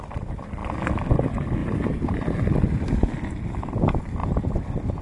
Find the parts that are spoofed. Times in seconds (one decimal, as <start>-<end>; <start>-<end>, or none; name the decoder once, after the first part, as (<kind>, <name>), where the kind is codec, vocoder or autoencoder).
1.6-2.5 (vocoder, BigVGAN v2); 4.2-5.0